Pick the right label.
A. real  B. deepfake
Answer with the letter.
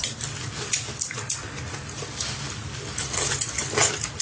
A